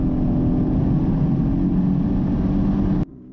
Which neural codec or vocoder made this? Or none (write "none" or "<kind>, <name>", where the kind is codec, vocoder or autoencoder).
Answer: none